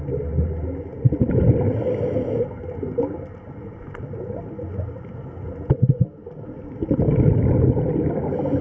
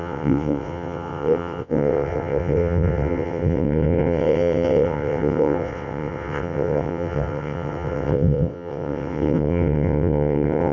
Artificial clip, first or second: second